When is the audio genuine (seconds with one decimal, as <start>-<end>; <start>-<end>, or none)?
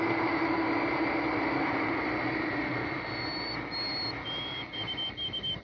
2.7-5.6